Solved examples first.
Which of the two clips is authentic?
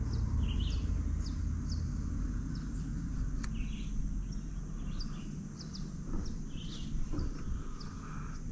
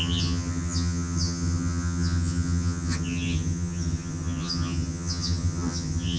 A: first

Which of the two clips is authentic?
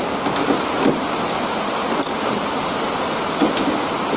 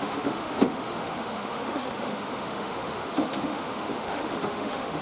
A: first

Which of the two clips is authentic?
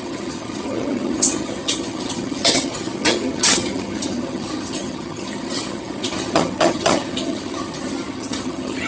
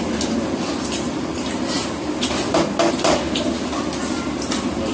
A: second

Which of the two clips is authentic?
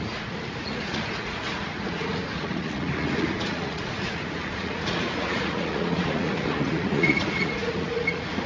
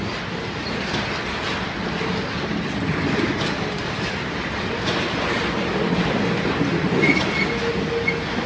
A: second